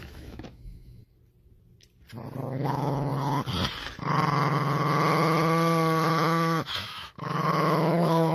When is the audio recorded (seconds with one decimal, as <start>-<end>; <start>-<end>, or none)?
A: 1.0-2.5; 3.1-6.1